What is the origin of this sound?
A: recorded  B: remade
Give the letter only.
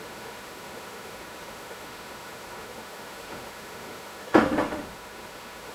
B